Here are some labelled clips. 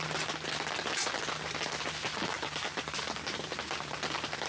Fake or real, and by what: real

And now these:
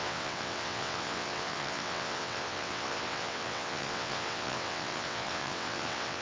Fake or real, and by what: fake, vocoder, WaveNeXt